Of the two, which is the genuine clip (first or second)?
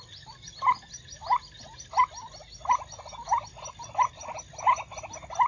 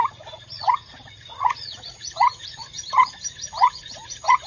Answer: first